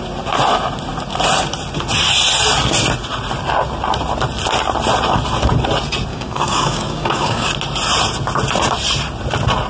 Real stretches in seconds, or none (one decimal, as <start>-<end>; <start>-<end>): 0.0-6.1; 7.5-9.7